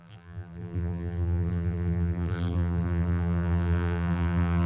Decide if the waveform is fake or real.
fake